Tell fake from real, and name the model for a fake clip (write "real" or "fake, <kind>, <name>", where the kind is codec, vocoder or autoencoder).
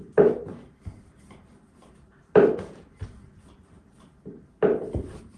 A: real